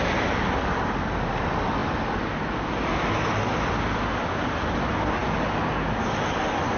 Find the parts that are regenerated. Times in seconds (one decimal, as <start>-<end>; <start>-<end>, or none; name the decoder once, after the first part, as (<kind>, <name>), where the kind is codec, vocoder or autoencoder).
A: none